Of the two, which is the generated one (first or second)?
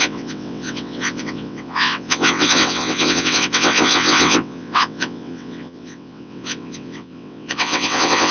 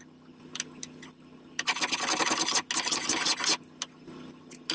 first